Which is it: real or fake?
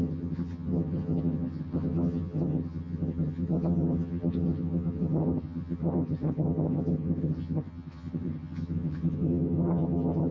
fake